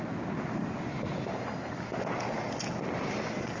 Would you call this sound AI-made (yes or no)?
no